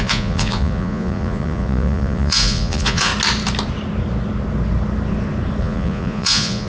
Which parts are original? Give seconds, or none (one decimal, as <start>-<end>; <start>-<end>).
3.1-5.6

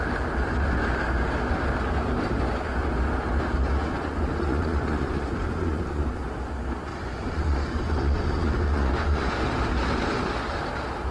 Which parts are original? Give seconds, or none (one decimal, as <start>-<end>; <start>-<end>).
0.0-3.8; 6.2-6.9; 9.3-11.1